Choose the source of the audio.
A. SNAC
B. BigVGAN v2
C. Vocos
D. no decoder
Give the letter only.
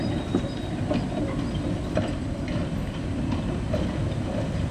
B